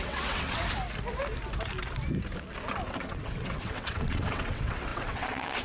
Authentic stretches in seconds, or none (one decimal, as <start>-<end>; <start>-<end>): 0.6-2.9

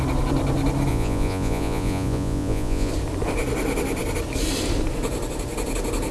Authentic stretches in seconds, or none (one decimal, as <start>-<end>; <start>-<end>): 0.0-0.9; 2.9-6.1

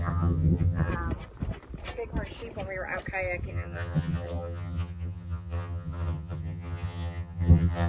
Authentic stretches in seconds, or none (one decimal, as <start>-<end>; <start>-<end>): 0.9-3.5